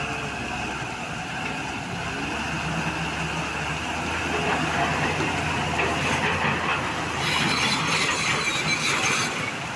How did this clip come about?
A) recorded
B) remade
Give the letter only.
A